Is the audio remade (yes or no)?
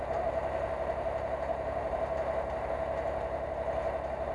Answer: no